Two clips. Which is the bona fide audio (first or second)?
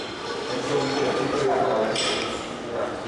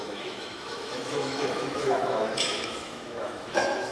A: first